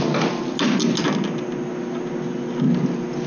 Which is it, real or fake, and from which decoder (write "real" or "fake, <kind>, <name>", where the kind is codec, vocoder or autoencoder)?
real